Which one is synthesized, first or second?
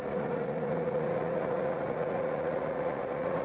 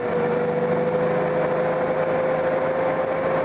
first